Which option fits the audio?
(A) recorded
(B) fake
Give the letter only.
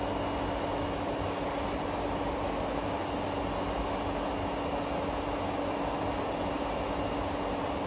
A